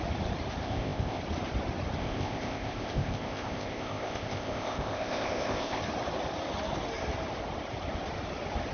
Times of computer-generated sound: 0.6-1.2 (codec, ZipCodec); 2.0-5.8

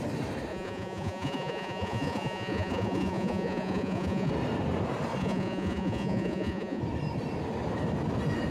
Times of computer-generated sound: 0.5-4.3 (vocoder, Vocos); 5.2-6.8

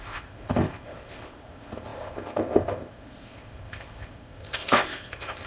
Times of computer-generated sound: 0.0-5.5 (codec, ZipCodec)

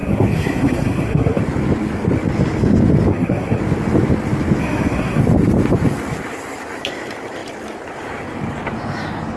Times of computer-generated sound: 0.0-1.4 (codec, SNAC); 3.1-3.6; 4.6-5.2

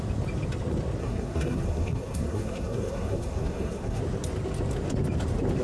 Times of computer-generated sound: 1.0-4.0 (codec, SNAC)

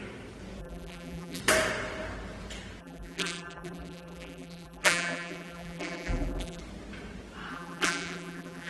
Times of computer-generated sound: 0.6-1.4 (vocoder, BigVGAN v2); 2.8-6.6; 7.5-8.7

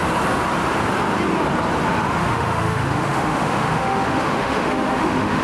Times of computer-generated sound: 2.2-5.4 (autoencoder, DAC-VAE)

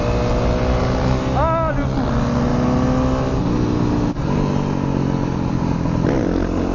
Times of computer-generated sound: none